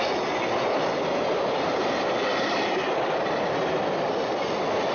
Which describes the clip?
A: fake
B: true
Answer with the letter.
B